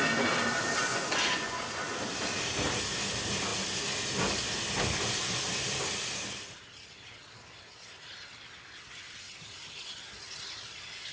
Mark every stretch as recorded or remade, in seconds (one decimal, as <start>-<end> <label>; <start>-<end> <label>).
0.0-0.9 recorded; 0.9-1.6 remade; 1.6-11.1 recorded